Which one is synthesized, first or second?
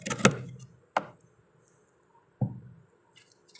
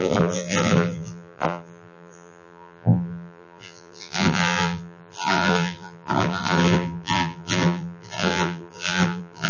second